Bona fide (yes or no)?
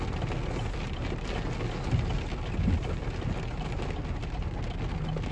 yes